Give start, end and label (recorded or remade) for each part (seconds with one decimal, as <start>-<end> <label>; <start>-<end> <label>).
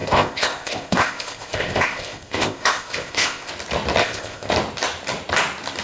0.0-3.5 remade; 3.5-4.0 recorded; 4.0-4.5 remade; 4.5-5.8 recorded